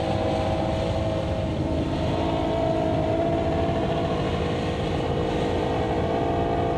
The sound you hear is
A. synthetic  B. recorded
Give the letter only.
B